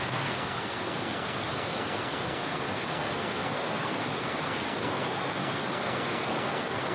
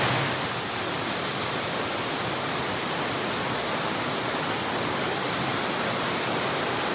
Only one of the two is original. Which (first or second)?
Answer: second